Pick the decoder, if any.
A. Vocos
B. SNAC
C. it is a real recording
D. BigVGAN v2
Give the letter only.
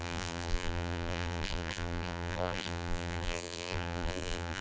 D